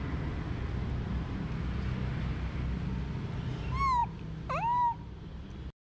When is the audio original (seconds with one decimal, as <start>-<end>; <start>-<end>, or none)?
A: 0.0-5.8